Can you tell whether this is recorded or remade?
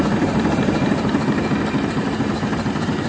remade